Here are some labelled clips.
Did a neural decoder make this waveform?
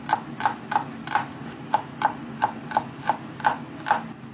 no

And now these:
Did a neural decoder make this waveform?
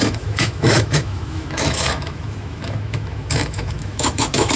yes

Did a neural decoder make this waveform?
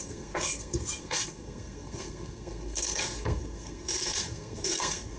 yes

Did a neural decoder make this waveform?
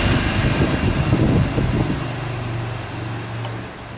no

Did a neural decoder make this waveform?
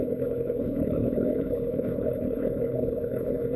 yes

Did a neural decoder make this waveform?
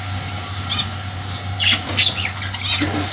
no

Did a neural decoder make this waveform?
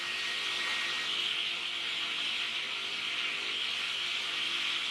no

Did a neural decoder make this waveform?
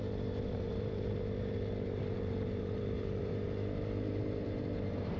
yes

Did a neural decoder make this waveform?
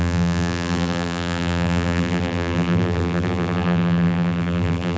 yes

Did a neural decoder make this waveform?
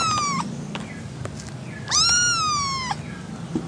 no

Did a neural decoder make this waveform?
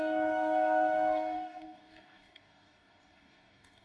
yes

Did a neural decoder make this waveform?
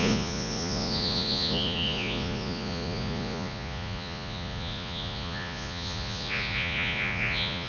yes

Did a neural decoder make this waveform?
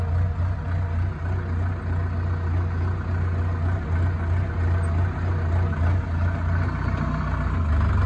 no